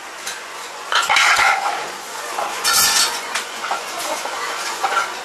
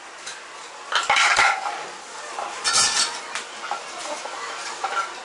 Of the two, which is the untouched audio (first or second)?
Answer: second